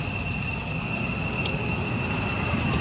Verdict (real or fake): real